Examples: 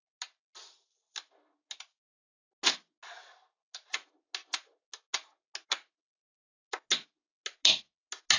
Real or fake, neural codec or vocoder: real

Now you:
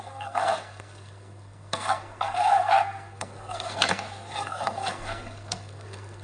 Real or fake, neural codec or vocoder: fake, codec, SNAC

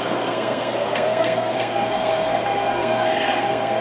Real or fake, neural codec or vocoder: fake, codec, SNAC